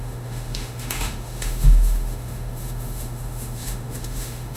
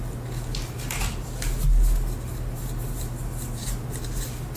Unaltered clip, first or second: second